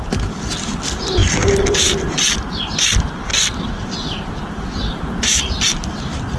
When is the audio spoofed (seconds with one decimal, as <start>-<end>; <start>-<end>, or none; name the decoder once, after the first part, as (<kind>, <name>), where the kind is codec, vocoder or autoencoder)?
none